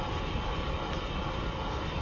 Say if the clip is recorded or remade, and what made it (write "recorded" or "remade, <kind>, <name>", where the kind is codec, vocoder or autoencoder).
remade, vocoder, BigVGAN v2